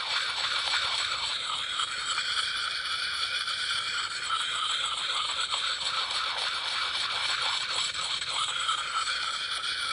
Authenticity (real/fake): fake